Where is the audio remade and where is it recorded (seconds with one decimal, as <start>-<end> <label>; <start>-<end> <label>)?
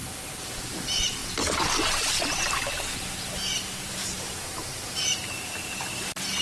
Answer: 0.0-1.2 remade; 1.2-5.0 recorded; 5.0-6.4 remade